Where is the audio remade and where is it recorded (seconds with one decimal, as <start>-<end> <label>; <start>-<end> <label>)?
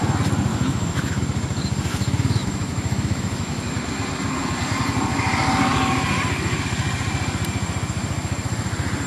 0.0-0.5 recorded; 0.5-1.2 remade; 1.2-1.9 recorded; 1.9-3.6 remade; 3.6-9.1 recorded